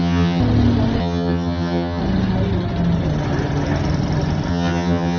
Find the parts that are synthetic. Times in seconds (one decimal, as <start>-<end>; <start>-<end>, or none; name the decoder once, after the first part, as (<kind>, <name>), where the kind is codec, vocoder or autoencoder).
0.0-0.4 (vocoder, HiFi-GAN); 1.0-2.0; 4.5-5.2